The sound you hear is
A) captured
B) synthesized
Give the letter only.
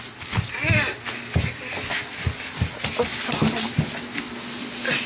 A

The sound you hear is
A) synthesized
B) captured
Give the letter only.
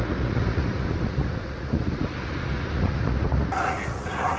A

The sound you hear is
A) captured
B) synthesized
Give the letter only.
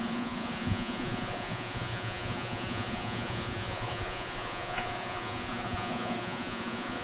B